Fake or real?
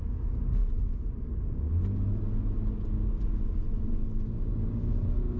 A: real